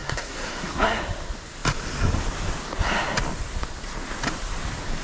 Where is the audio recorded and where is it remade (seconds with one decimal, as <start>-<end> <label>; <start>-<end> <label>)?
0.0-1.0 remade; 1.0-5.0 recorded

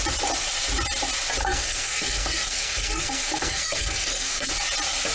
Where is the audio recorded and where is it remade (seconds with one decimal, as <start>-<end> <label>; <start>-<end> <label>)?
0.0-1.4 recorded; 1.4-4.5 remade; 4.5-5.1 recorded

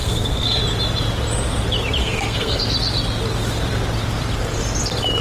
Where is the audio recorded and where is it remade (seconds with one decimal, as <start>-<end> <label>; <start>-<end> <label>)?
0.0-0.6 remade; 0.6-2.0 recorded; 2.0-2.6 remade; 2.6-5.2 recorded